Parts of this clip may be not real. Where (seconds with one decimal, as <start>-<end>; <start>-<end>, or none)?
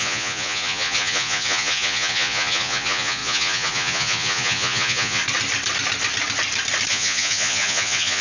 0.0-5.2; 6.9-8.2